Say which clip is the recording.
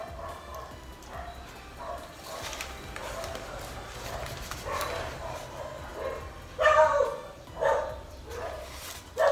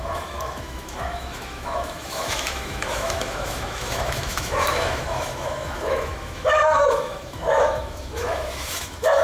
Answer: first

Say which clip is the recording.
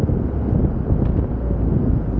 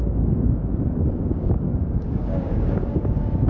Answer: first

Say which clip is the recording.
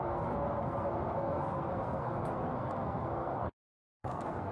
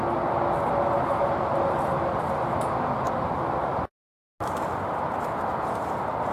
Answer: second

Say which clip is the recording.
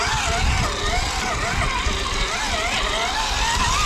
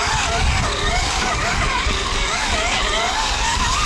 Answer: first